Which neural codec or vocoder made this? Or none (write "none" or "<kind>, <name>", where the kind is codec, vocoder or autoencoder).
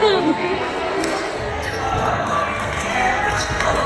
codec, SNAC